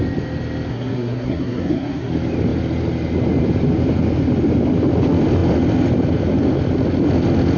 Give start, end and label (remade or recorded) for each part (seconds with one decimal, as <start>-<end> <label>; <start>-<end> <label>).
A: 0.0-0.7 recorded; 0.7-2.1 remade; 2.1-7.6 recorded